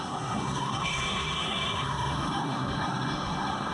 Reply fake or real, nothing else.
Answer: fake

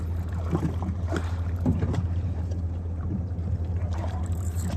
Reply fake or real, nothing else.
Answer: fake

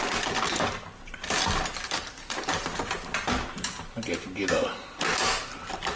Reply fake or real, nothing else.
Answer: real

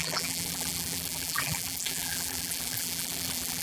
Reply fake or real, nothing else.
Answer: fake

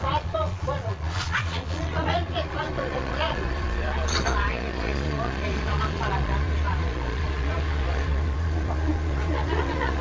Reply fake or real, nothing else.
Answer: fake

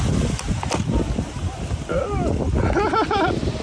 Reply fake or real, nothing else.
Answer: real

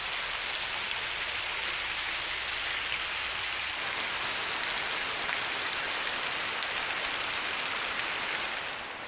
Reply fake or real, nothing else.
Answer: real